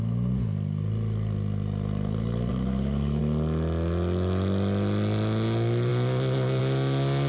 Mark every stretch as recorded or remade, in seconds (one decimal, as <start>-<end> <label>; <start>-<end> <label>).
0.0-2.5 recorded; 2.5-3.2 remade; 3.2-7.3 recorded